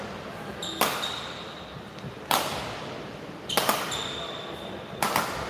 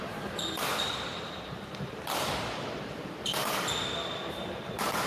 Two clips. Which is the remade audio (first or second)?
second